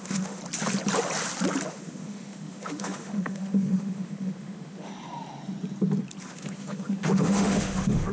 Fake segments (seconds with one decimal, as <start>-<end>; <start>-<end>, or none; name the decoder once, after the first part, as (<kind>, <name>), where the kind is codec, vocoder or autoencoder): 0.0-0.4 (autoencoder, DAC-VAE); 1.7-4.9; 6.2-8.1